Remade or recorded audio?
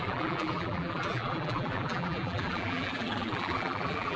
remade